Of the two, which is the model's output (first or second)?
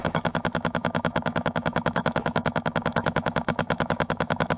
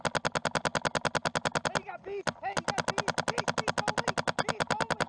first